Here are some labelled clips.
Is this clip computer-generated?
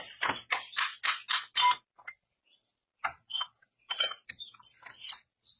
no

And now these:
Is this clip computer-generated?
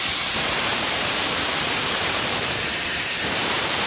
yes